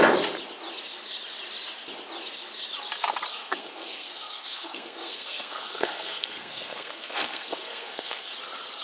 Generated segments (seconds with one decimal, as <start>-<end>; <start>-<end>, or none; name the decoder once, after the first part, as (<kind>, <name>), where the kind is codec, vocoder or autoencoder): 3.3-8.3 (codec, SNAC)